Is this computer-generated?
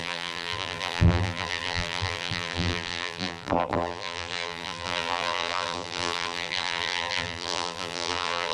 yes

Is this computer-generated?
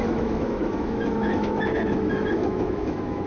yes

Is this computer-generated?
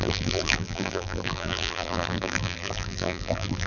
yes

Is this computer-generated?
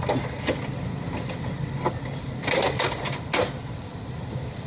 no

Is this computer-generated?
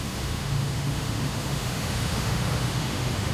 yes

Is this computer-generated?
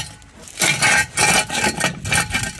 no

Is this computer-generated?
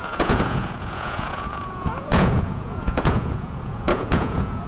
yes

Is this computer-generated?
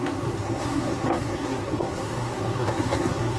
yes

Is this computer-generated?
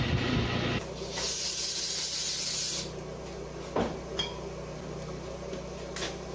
no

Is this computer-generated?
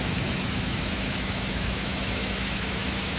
yes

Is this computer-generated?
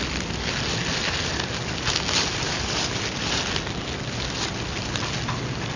no